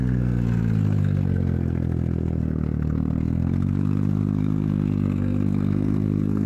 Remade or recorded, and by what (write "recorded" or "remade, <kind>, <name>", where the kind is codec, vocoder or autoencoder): remade, codec, SNAC